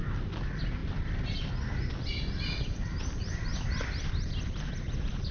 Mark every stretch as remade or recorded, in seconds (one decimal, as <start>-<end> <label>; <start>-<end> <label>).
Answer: 0.0-5.3 recorded